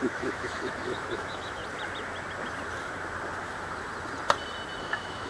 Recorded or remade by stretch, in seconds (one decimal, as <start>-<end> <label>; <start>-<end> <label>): 0.0-1.6 remade; 1.6-4.8 recorded; 4.8-5.3 remade